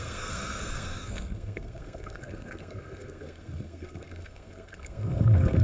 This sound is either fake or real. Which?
fake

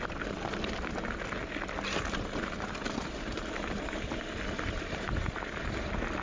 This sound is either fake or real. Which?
real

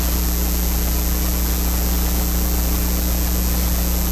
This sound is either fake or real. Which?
real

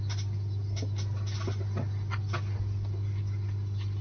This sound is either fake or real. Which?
real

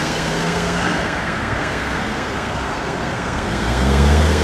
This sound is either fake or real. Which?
fake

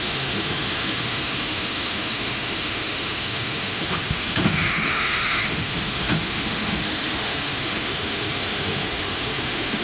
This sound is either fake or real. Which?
fake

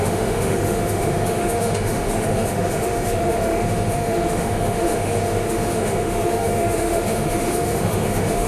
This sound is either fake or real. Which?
fake